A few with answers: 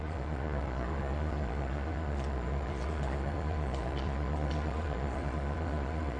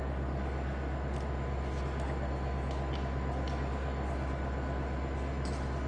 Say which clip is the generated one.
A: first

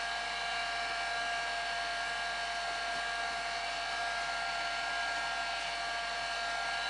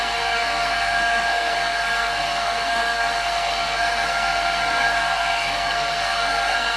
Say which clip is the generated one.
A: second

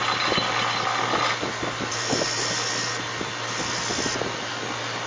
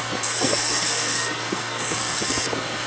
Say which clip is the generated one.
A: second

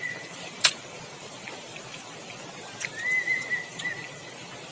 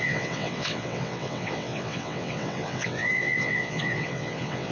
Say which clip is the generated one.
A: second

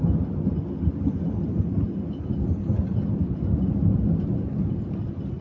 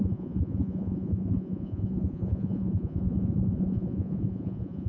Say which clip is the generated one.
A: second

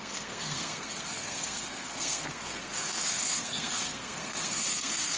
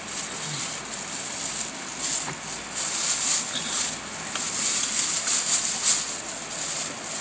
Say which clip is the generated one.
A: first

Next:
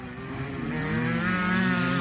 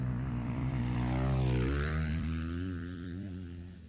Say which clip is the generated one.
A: second